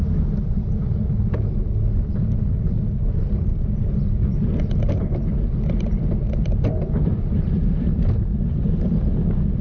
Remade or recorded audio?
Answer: remade